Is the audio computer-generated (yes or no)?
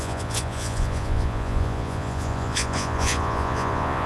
yes